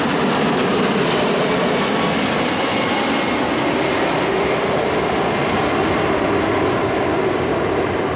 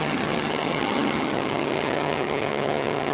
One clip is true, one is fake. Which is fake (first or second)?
second